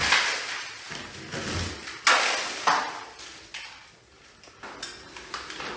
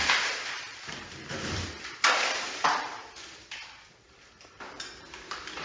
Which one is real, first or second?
first